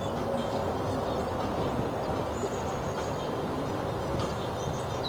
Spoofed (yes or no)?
no